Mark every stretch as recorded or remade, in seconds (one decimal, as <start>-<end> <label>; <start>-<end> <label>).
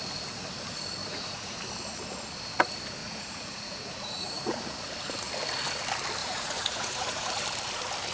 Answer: 0.0-1.0 recorded; 1.0-1.6 remade; 1.6-3.0 recorded; 3.0-4.6 remade; 4.6-6.2 recorded; 6.2-7.3 remade; 7.3-8.1 recorded